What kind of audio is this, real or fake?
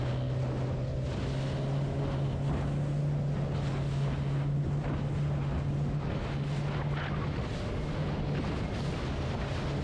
real